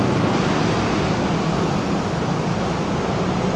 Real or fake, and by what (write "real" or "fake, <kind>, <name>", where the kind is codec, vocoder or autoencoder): real